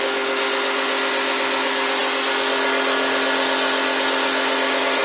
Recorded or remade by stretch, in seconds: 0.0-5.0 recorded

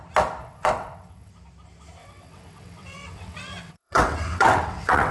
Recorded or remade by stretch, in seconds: 0.0-0.4 recorded; 0.4-1.3 remade; 1.3-2.0 recorded; 2.0-5.1 remade

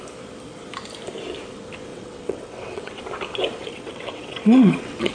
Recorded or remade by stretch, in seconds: 0.0-1.9 recorded; 1.9-3.0 remade; 3.0-3.6 recorded; 3.6-5.1 remade

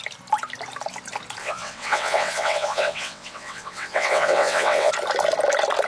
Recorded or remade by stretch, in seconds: 0.0-1.4 recorded; 1.4-4.9 remade; 4.9-5.9 recorded

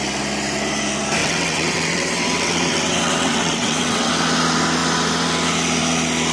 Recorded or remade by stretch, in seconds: 0.0-1.2 recorded; 1.2-4.1 remade; 4.1-6.3 recorded

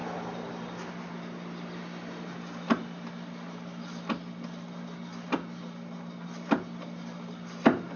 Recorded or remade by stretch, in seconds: 0.0-8.0 recorded

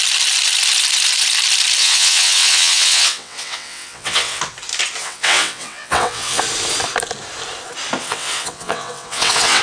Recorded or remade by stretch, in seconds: 0.0-1.8 recorded; 1.8-4.4 remade; 4.4-5.0 recorded; 5.0-6.4 remade; 6.4-8.0 recorded; 8.0-9.6 remade